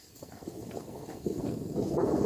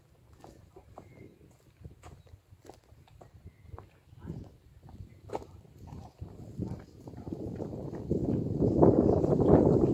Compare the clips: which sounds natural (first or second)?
second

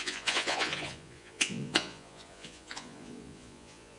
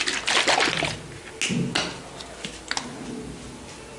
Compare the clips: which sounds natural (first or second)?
second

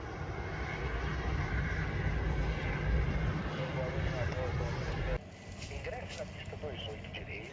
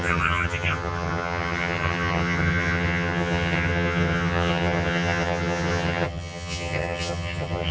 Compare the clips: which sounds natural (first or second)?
first